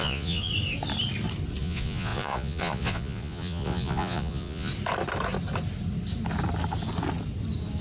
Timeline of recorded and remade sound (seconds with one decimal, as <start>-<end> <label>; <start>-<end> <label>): 0.0-0.5 remade; 0.5-1.6 recorded; 1.6-4.7 remade; 4.7-7.8 recorded